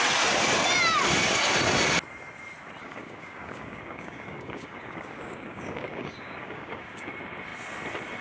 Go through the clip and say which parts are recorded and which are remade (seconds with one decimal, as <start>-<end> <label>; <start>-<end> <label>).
0.0-2.8 recorded; 2.8-7.1 remade; 7.1-8.2 recorded